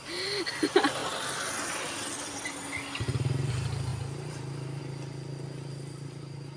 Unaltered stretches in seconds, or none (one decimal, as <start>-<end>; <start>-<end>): 0.0-6.6

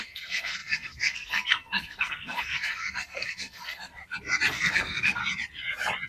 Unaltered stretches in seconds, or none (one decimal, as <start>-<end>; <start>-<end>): 3.9-4.5; 5.2-6.1

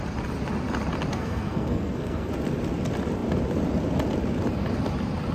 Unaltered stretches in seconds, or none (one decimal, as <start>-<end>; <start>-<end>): 0.0-1.1; 2.3-5.3

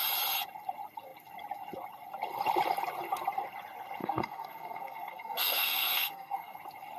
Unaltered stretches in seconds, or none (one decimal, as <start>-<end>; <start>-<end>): 0.0-4.0; 6.6-7.0

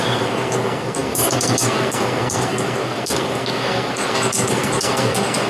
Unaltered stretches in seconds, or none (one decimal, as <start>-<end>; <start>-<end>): none

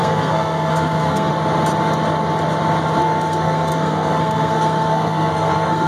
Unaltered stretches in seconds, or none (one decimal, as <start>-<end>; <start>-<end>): 1.3-3.0